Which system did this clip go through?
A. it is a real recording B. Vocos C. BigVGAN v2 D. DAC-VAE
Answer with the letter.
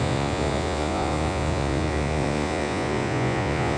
B